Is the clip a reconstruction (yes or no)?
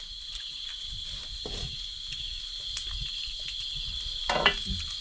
no